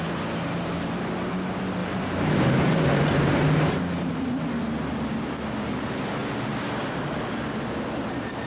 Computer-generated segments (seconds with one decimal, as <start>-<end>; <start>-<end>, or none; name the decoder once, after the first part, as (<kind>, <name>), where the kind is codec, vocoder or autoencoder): 1.8-4.1 (vocoder, BigVGAN v2)